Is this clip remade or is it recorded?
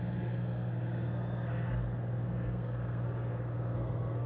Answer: remade